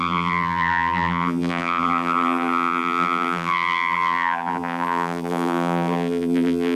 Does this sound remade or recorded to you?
remade